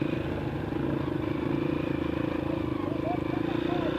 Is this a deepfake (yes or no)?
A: no